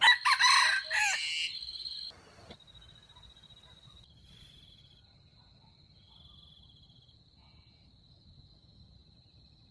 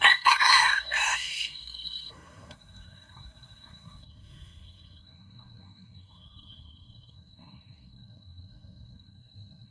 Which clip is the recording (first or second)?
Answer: first